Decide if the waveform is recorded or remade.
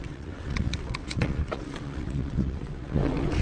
remade